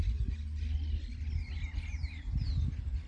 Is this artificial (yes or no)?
no